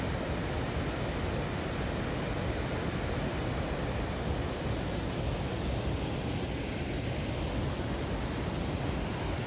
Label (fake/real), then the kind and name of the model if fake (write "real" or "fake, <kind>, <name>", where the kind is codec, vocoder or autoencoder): real